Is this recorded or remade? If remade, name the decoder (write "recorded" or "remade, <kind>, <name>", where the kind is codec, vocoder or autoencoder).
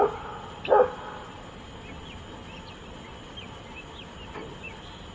recorded